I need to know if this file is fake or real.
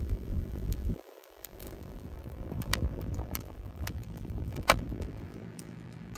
fake